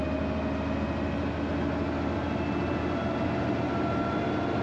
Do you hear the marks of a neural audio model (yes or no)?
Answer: no